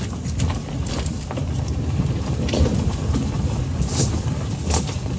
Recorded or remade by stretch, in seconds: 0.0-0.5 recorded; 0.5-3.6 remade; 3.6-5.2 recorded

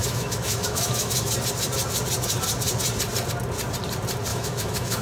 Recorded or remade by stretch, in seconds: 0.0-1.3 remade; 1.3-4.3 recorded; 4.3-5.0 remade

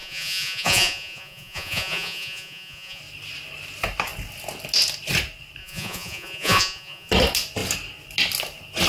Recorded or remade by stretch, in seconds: 0.0-3.0 remade; 3.0-5.6 recorded; 5.6-7.1 remade; 7.1-8.9 recorded